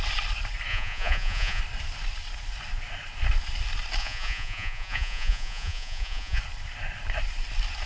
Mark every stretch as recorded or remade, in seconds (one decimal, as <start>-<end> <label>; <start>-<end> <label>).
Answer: 0.0-0.7 recorded; 0.7-1.6 remade; 1.6-4.0 recorded; 4.0-6.4 remade; 6.4-7.9 recorded